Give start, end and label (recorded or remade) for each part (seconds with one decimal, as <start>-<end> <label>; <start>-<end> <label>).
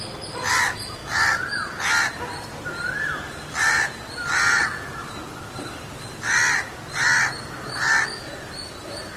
0.0-9.2 recorded